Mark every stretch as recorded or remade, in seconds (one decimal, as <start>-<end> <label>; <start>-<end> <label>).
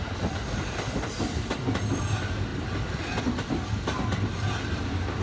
0.0-5.2 recorded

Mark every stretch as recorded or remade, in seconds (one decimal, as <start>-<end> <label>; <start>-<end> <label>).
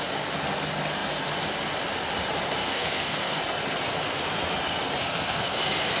0.0-2.6 recorded; 2.6-3.4 remade; 3.4-5.0 recorded; 5.0-5.6 remade; 5.6-6.0 recorded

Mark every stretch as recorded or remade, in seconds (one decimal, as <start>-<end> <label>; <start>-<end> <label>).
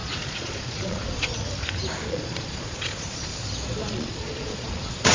0.0-1.3 remade; 1.3-2.1 recorded; 2.1-3.3 remade; 3.3-3.9 recorded; 3.9-5.1 remade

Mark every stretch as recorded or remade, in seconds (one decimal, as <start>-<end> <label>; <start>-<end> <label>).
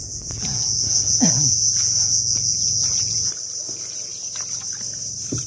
0.0-3.3 remade; 3.3-5.5 recorded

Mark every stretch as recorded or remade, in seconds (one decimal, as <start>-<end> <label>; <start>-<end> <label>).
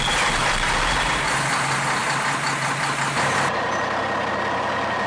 0.0-5.1 recorded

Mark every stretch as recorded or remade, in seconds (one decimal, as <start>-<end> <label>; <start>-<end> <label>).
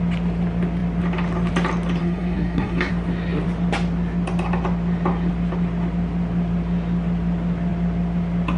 0.0-2.0 recorded; 2.0-2.9 remade; 2.9-8.6 recorded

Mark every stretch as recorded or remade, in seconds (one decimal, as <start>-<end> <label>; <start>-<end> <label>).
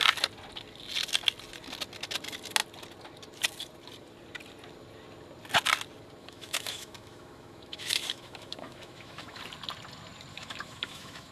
0.0-6.2 recorded; 6.2-9.4 remade; 9.4-10.3 recorded; 10.3-11.3 remade